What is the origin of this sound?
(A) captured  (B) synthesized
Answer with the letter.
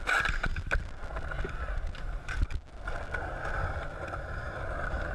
A